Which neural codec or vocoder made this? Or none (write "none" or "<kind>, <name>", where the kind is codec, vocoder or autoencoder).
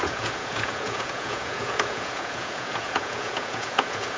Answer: vocoder, Vocos